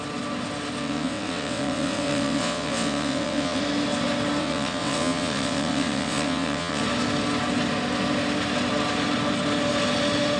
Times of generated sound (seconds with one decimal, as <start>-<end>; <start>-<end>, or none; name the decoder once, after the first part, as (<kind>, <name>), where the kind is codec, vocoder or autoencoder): 0.8-3.6 (vocoder, WaveNeXt); 4.4-6.8